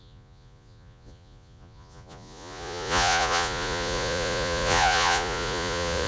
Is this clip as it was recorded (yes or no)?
no